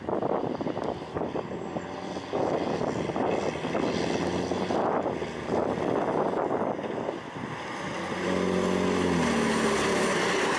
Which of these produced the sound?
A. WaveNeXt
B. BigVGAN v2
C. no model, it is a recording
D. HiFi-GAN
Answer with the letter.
C